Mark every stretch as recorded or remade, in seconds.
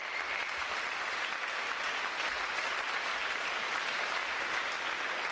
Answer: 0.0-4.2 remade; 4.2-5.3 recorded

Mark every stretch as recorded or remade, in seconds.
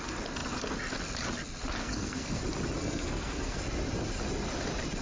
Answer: 0.0-1.8 recorded; 1.8-2.4 remade; 2.4-2.8 recorded; 2.8-3.6 remade; 3.6-5.0 recorded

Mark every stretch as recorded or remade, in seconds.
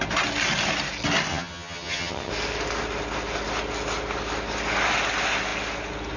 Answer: 0.0-1.3 recorded; 1.3-2.3 remade; 2.3-6.2 recorded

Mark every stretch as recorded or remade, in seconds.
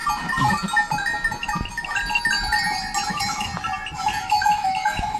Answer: 0.0-3.1 recorded; 3.1-3.5 remade; 3.5-4.2 recorded; 4.2-5.2 remade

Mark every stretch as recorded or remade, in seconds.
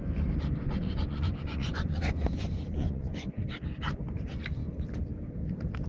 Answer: 0.0-0.6 recorded; 0.6-3.4 remade; 3.4-5.9 recorded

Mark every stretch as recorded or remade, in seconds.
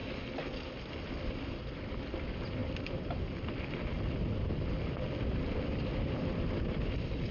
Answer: 0.0-2.6 recorded; 2.6-5.9 remade; 5.9-7.3 recorded